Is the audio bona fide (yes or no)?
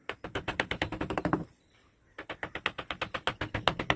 yes